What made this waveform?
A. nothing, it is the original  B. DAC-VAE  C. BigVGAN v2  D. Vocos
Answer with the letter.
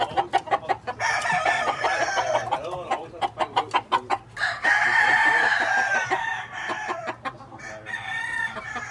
A